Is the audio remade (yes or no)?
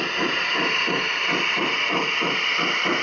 no